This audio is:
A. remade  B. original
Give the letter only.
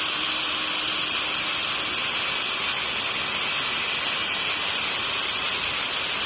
B